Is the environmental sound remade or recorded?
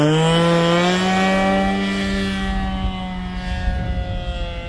recorded